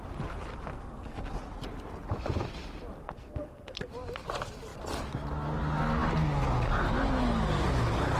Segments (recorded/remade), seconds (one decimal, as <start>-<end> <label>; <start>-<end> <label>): 0.0-0.7 recorded; 0.7-1.2 remade; 1.2-3.0 recorded; 3.0-3.9 remade; 3.9-8.2 recorded